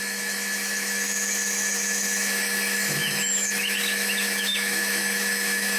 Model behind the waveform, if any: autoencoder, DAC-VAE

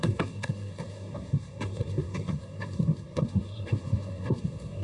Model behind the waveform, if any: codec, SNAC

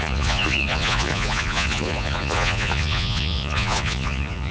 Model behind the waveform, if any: vocoder, Vocos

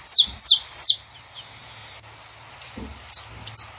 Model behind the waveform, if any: none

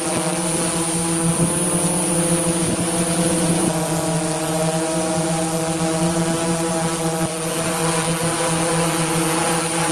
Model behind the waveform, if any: none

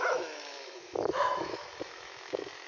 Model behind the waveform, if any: autoencoder, DAC-VAE